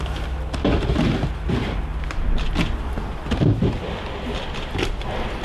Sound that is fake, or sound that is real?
real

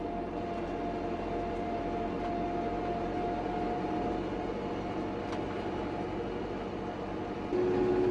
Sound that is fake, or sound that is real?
real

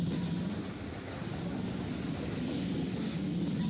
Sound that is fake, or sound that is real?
real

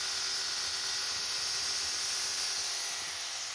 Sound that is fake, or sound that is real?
real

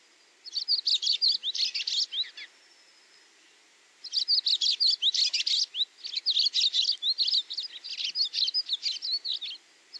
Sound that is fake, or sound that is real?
real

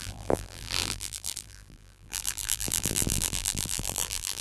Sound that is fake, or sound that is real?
fake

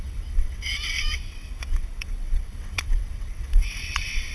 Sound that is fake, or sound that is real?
fake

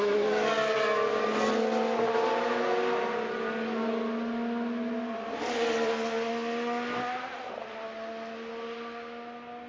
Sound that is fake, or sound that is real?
real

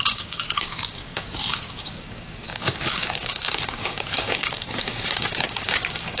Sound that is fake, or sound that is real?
fake